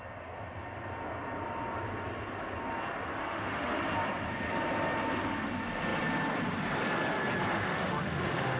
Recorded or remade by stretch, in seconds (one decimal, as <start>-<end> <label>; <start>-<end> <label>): 0.0-3.2 recorded; 3.2-3.8 remade; 3.8-7.5 recorded; 7.5-8.6 remade